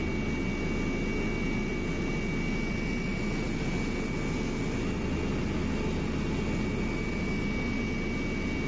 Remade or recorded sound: recorded